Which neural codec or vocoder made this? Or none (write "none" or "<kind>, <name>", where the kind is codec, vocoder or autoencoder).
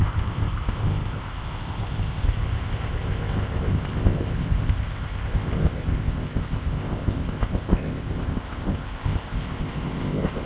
codec, ZipCodec